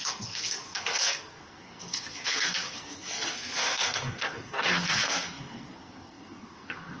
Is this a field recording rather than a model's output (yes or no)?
no